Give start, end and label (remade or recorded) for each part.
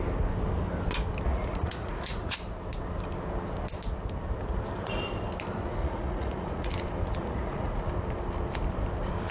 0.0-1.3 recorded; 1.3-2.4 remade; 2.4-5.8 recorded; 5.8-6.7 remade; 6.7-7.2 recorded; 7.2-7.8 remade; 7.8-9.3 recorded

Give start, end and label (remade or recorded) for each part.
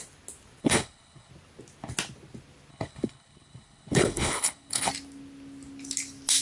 0.0-0.6 recorded; 0.6-1.3 remade; 1.3-2.7 recorded; 2.7-4.9 remade; 4.9-6.4 recorded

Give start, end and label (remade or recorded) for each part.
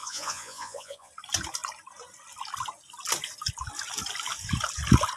0.0-1.1 remade; 1.1-5.2 recorded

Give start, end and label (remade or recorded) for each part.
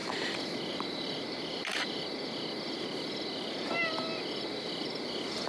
0.0-1.2 remade; 1.2-5.5 recorded